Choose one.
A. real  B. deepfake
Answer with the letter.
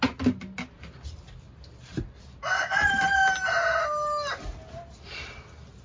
A